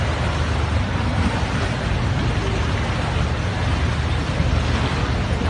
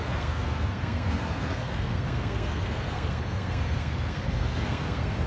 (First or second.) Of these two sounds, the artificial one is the second